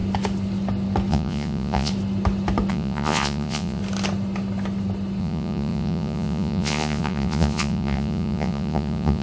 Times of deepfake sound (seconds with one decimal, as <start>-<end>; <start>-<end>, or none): 1.1-1.9; 2.7-3.8; 5.2-9.2